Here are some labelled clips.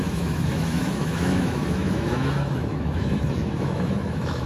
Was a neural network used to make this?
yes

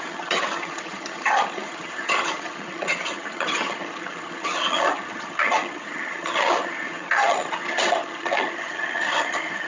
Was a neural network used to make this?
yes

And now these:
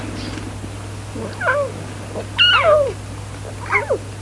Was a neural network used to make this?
no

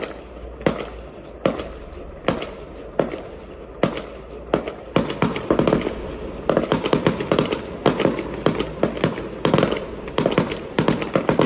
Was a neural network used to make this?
no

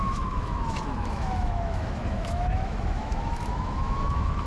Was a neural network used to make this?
yes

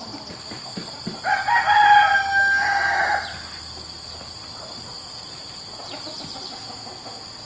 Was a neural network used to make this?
no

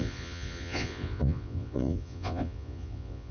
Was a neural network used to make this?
yes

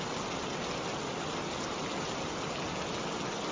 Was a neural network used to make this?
no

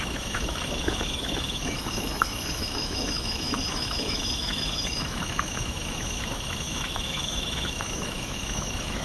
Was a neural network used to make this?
yes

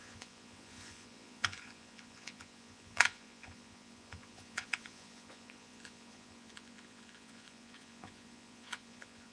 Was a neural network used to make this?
yes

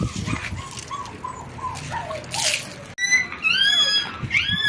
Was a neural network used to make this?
no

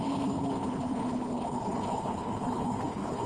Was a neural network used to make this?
yes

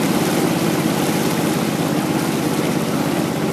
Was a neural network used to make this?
no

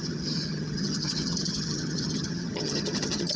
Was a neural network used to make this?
yes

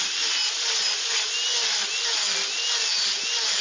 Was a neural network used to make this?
no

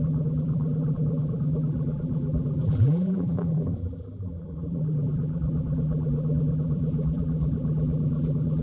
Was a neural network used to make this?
yes